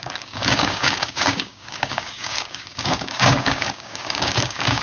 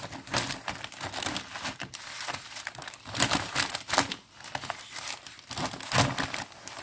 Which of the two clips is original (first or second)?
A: second